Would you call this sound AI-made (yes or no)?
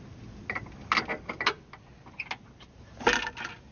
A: no